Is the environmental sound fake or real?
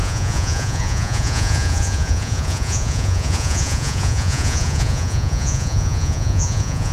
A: fake